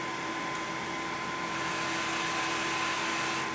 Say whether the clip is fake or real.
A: real